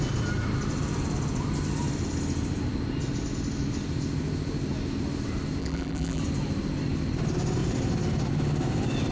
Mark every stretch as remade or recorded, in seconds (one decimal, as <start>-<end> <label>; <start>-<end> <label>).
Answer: 0.0-5.6 recorded; 5.6-6.2 remade; 6.2-9.1 recorded